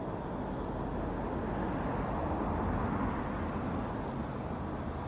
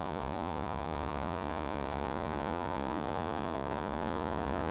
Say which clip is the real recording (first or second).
first